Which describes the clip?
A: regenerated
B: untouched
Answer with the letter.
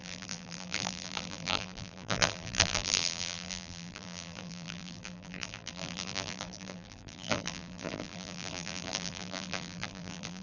A